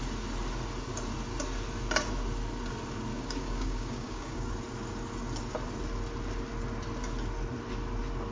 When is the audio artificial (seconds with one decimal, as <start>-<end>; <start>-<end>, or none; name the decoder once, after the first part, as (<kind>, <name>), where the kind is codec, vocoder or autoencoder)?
3.1-4.5 (codec, DAC)